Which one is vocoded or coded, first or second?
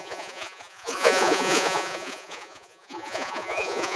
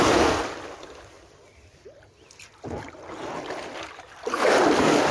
first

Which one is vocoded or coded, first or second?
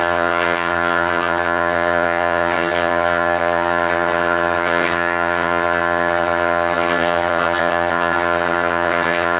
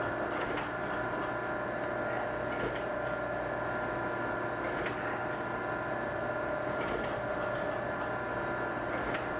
first